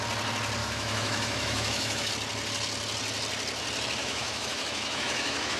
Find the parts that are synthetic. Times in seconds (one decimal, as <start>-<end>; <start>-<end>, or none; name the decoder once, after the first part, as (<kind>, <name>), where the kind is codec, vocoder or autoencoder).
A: 0.6-2.1 (autoencoder, DAC-VAE); 4.0-5.6